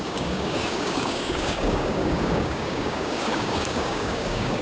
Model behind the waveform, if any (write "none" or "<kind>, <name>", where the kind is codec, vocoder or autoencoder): codec, DAC